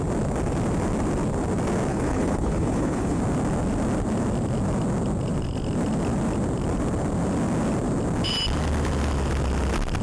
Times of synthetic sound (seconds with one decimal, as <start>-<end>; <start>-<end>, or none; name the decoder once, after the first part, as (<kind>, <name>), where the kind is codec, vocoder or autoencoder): 1.9-3.2 (codec, HILCodec)